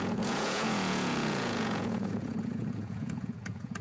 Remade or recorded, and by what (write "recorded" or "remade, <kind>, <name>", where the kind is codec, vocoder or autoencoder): remade, vocoder, Vocos